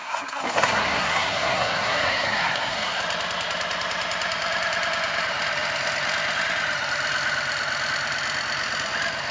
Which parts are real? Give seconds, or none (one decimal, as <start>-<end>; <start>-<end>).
3.0-9.3